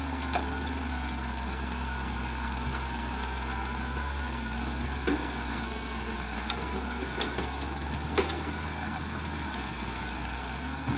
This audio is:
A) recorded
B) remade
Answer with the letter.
B